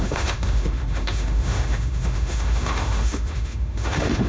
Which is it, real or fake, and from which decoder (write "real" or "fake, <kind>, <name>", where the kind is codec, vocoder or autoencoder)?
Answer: fake, autoencoder, DAC-VAE